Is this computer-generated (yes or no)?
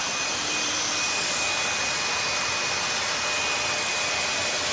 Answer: no